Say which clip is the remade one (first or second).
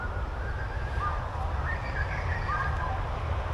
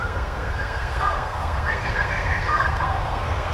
second